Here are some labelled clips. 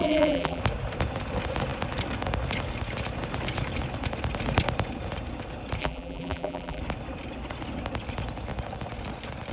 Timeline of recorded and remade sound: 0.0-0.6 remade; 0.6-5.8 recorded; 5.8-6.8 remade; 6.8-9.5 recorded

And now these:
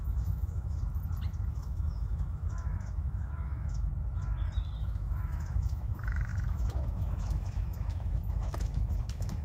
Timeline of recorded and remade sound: 0.0-0.8 remade; 0.8-1.5 recorded; 1.5-3.9 remade; 3.9-4.8 recorded; 4.8-9.4 remade

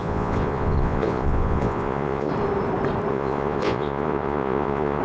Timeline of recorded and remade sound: 0.0-2.3 remade; 2.3-3.1 recorded; 3.1-5.0 remade